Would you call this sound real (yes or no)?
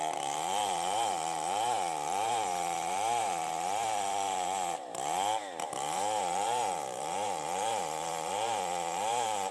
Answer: no